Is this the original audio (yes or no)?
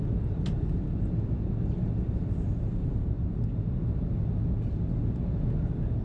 yes